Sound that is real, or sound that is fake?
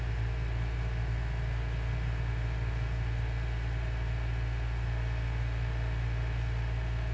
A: real